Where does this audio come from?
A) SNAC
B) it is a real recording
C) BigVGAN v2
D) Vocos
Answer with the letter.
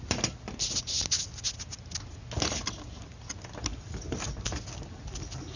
B